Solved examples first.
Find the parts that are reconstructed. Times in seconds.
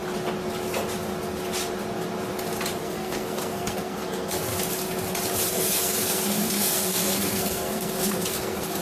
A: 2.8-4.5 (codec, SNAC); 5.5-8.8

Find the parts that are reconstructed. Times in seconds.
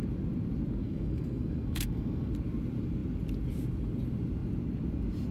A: 0.8-2.3 (codec, SNAC)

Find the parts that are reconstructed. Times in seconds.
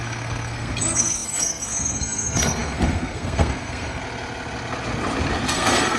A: 0.0-4.0 (codec, SNAC); 5.5-6.0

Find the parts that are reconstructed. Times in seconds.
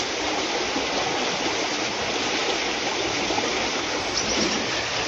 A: none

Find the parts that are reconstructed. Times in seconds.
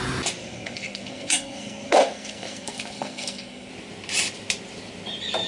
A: 0.4-3.7 (codec, SNAC)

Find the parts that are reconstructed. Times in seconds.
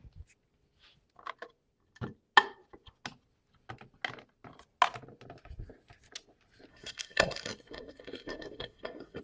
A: 6.7-9.2 (codec, SNAC)